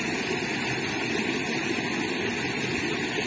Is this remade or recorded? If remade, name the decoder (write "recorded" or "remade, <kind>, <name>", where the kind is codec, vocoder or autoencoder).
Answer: recorded